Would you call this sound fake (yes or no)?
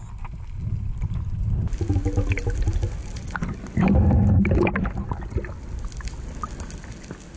no